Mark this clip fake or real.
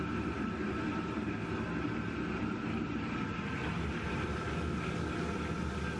real